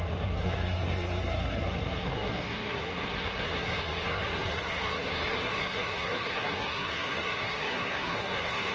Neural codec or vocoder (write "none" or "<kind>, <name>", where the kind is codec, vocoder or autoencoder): codec, SNAC